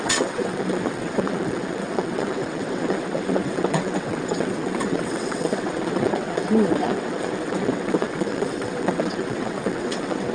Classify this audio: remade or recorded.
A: remade